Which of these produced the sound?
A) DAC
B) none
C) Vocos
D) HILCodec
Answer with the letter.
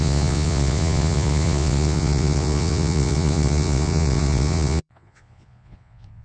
C